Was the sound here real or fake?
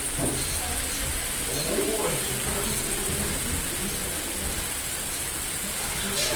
real